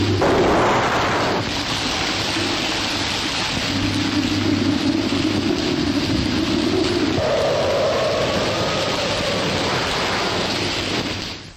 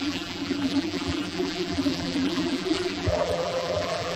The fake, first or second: second